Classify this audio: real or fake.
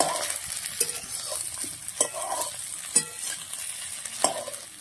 real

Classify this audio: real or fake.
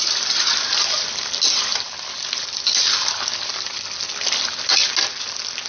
real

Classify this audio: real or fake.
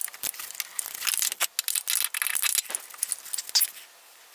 real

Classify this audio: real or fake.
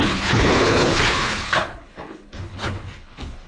fake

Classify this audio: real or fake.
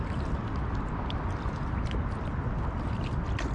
real